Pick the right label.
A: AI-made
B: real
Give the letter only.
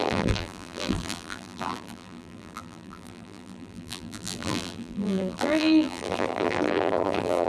A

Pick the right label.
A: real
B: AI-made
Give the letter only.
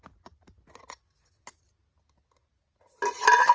A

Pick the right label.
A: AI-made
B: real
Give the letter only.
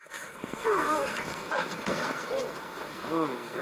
A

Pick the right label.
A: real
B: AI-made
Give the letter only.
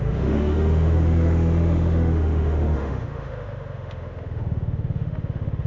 B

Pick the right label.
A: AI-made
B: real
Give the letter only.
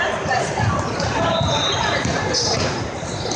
B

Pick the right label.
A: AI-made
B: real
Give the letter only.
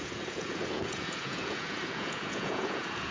A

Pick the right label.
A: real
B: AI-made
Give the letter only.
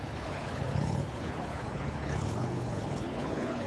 B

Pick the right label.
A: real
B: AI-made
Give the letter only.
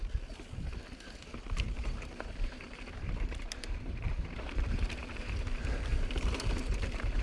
B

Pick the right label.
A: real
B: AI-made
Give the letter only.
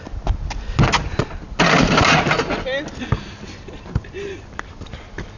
A